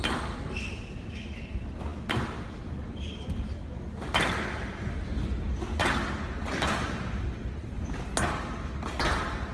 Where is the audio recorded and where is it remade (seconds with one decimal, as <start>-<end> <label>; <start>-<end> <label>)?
0.0-9.5 recorded